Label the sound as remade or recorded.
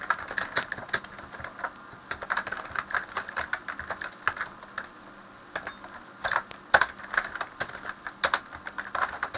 recorded